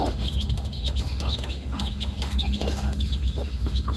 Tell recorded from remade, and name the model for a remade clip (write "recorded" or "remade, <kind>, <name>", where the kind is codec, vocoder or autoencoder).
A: remade, autoencoder, DAC-VAE